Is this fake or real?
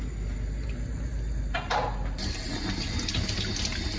real